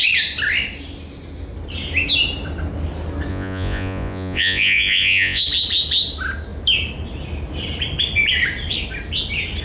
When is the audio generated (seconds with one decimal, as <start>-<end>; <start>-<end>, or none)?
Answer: 3.3-5.4